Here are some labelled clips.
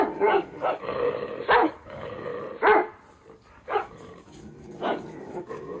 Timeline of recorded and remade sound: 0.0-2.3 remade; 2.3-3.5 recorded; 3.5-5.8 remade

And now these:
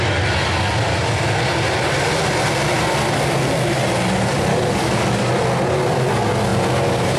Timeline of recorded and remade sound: 0.0-4.5 recorded; 4.5-5.3 remade; 5.3-7.2 recorded

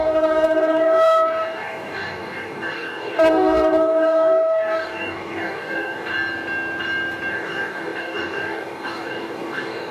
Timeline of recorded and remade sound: 0.0-6.1 remade; 6.1-7.3 recorded; 7.3-9.9 remade